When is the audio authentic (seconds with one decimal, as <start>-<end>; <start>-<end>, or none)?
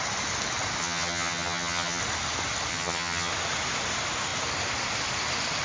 0.0-0.8; 2.0-2.7; 3.3-5.6